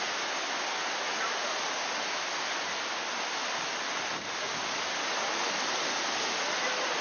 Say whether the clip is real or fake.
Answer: real